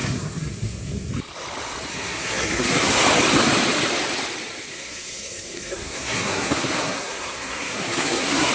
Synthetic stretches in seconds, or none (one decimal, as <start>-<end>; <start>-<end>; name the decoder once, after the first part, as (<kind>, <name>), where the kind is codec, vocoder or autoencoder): 0.0-1.1 (codec, SNAC); 1.9-2.9; 4.7-8.5